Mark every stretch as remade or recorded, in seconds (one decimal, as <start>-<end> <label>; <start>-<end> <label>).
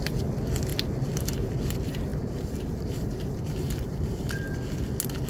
0.0-2.1 recorded; 2.1-4.3 remade; 4.3-5.3 recorded